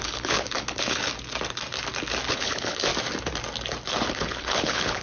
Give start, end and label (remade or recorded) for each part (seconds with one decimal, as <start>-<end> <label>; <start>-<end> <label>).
0.0-1.1 remade; 1.1-2.3 recorded; 2.3-2.9 remade; 2.9-4.1 recorded; 4.1-5.0 remade